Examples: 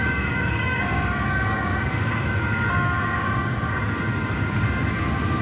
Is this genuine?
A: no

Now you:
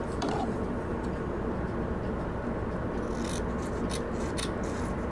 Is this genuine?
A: yes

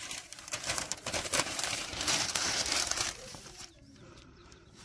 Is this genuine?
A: no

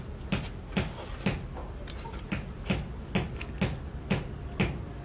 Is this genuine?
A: yes